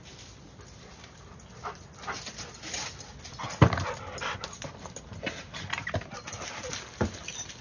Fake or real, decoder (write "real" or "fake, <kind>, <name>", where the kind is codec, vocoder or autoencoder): real